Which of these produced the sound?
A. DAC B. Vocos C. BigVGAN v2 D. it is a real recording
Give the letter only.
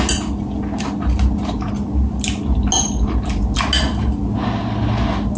D